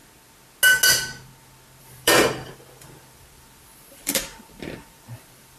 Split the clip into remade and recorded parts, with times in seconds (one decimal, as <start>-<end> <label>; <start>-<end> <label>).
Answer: 0.0-1.8 recorded; 1.8-5.6 remade